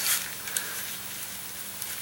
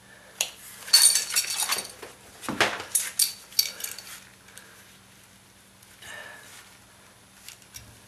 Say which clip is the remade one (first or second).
first